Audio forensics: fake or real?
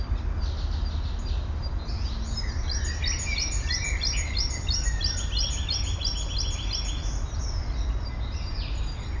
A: real